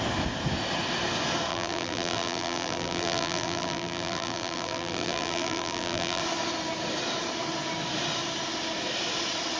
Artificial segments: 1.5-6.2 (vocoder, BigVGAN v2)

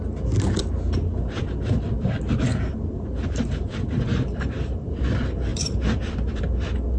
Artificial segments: 2.5-4.9 (vocoder, BigVGAN v2); 5.5-6.4

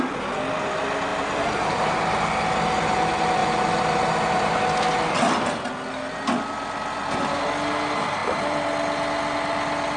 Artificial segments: 1.1-2.0 (vocoder, BigVGAN v2); 3.4-4.6

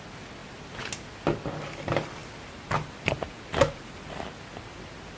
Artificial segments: none

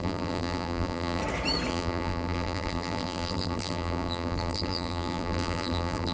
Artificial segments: 0.0-1.2 (vocoder, BigVGAN v2); 1.7-6.1

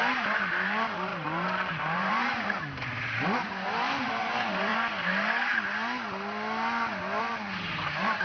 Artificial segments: 0.0-4.7 (vocoder, BigVGAN v2); 7.2-8.2

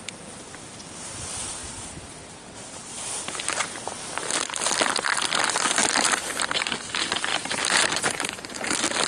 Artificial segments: 1.6-3.7 (vocoder, BigVGAN v2); 5.8-6.4; 7.3-8.7

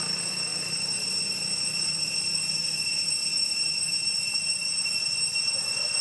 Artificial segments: 0.0-4.6 (vocoder, BigVGAN v2)